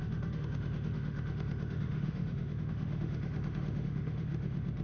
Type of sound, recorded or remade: remade